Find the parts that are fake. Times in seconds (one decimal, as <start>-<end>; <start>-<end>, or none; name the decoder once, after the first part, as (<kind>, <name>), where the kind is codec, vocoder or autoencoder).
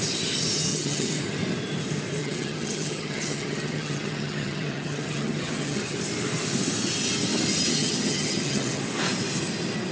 0.7-1.2 (vocoder, HiFi-GAN); 2.2-6.0; 7.8-8.8